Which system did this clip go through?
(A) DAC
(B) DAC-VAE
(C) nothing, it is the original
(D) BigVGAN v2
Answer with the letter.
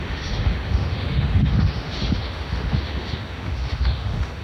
B